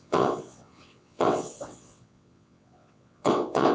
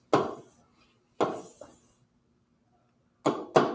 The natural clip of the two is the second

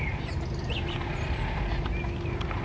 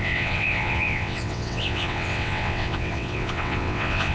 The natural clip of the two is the first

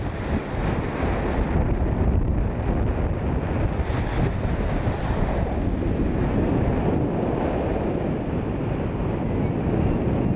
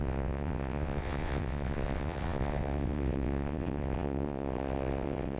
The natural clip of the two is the first